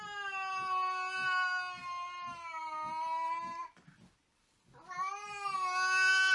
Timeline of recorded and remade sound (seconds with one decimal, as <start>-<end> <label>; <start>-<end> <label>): 0.0-6.3 recorded